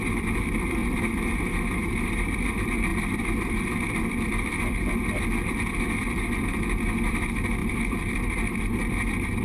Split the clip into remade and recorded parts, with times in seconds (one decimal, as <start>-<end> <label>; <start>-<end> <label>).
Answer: 0.0-9.4 remade